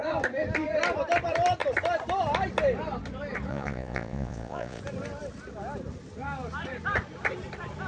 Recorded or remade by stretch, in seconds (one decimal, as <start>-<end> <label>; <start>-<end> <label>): 0.0-3.5 recorded; 3.5-4.8 remade; 4.8-7.9 recorded